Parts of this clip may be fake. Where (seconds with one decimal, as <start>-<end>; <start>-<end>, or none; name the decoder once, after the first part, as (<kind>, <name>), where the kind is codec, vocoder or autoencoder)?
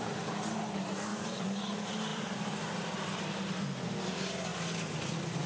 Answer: 1.1-1.7 (vocoder, BigVGAN v2); 2.1-3.2